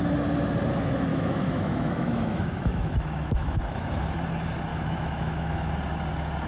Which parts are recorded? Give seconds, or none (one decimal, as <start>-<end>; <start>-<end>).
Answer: 0.0-1.1; 3.9-4.7; 5.7-6.5